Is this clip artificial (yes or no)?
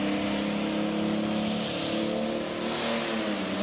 no